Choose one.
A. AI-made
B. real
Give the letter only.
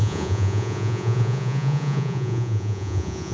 A